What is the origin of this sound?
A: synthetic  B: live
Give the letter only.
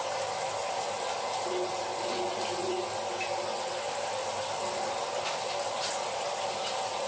B